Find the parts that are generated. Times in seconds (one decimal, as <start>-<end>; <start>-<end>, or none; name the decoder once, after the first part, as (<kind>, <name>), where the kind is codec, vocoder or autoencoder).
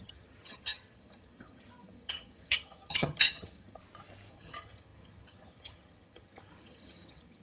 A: 0.0-3.8 (vocoder, HiFi-GAN); 4.3-7.4